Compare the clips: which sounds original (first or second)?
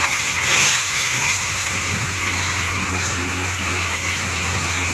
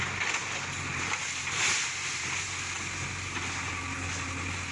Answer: second